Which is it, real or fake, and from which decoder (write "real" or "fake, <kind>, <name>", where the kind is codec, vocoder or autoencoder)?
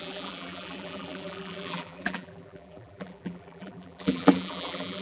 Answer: fake, vocoder, BigVGAN v2